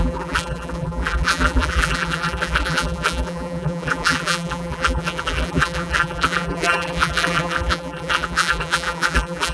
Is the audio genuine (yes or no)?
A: no